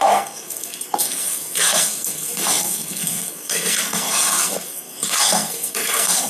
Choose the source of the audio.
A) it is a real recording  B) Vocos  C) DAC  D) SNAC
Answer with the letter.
D